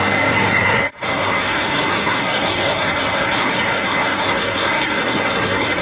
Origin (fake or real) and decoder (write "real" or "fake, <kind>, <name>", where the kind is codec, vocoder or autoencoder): fake, codec, SNAC